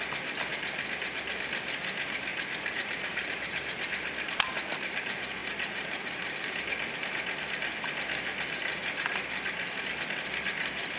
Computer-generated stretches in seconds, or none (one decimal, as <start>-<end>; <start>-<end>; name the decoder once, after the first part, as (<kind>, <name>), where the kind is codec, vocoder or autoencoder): 2.3-3.9 (vocoder, BigVGAN v2); 5.4-6.3

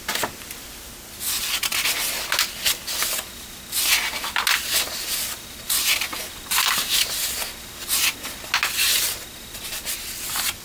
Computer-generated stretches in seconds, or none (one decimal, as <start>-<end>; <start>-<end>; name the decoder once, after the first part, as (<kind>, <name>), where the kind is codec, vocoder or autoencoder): none

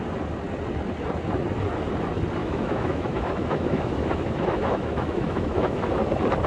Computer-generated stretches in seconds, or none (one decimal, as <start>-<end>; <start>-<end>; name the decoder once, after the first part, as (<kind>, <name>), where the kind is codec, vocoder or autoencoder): 2.4-5.9 (autoencoder, DAC-VAE)

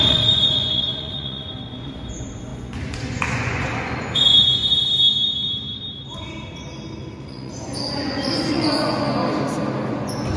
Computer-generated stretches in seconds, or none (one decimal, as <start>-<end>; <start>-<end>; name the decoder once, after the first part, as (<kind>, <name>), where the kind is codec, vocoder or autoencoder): 0.0-4.6 (vocoder, Vocos); 7.2-9.2; 9.9-10.4

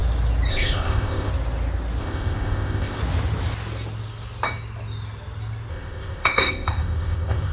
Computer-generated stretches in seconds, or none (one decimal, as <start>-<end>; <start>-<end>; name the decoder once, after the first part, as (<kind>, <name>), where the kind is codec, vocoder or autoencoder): 0.5-1.3 (codec, ZipCodec); 2.0-3.0; 5.7-7.5

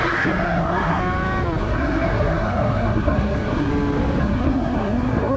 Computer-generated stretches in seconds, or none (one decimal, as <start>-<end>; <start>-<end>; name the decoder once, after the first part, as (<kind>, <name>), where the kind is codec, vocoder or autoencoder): 0.0-1.0 (codec, SNAC); 1.6-3.7; 4.2-5.4

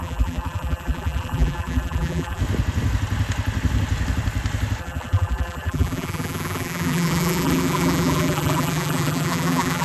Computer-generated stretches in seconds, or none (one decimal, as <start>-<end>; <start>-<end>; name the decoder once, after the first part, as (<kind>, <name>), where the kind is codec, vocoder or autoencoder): 0.0-2.4 (vocoder, BigVGAN v2); 4.8-9.8

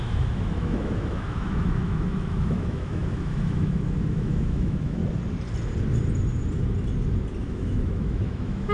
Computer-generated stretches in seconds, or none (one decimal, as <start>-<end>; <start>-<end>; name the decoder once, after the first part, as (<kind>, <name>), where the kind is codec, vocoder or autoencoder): 0.0-5.0 (autoencoder, DAC-VAE); 7.4-8.7